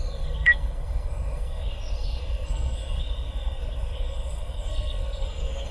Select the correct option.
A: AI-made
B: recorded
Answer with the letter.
A